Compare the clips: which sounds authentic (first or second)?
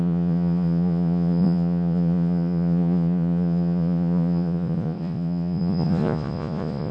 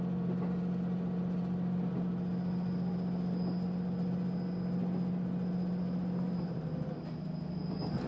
second